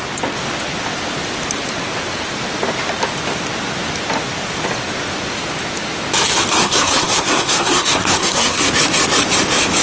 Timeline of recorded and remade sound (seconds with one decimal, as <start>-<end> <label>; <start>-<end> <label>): 0.0-6.6 recorded; 6.6-8.7 remade; 8.7-9.8 recorded